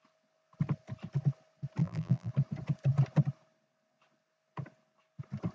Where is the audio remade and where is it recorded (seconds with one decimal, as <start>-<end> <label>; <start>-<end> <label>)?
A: 0.0-1.8 recorded; 1.8-2.3 remade; 2.3-5.5 recorded